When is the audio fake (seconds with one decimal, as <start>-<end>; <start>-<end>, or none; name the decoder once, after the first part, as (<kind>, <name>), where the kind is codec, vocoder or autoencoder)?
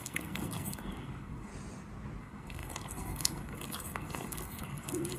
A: 0.0-1.5 (codec, SNAC); 2.2-5.2